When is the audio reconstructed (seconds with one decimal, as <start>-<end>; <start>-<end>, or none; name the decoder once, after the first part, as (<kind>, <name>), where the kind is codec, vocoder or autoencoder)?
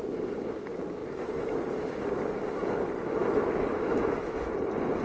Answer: 3.7-4.5 (autoencoder, DAC-VAE)